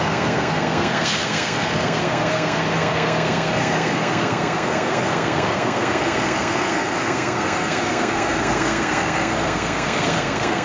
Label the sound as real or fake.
fake